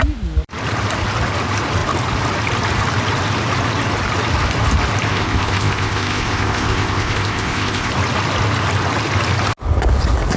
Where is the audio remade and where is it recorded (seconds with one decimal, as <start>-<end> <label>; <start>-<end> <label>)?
0.0-5.1 recorded; 5.1-7.9 remade; 7.9-10.4 recorded